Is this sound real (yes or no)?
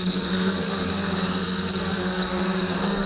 no